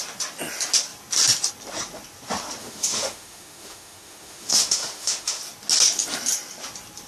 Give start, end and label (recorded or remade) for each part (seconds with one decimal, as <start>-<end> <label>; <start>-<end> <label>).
0.0-2.6 recorded; 2.6-5.4 remade; 5.4-7.1 recorded

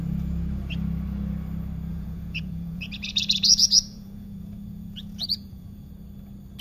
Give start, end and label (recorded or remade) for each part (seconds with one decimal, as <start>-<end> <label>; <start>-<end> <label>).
0.0-1.9 recorded; 1.9-5.9 remade; 5.9-6.6 recorded

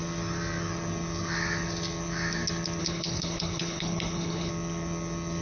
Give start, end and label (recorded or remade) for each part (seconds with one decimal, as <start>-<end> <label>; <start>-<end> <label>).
0.0-2.8 recorded; 2.8-4.5 remade; 4.5-5.4 recorded

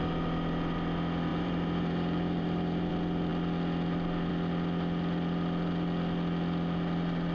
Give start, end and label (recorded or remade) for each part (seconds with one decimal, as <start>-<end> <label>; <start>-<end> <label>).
0.0-1.3 recorded; 1.3-2.9 remade; 2.9-7.3 recorded

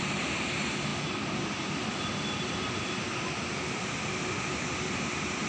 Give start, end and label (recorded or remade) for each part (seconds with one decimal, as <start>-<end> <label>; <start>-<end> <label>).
0.0-5.5 recorded